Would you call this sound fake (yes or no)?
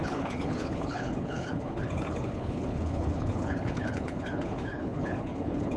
yes